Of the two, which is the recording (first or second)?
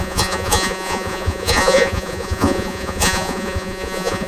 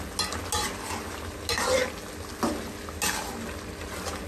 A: second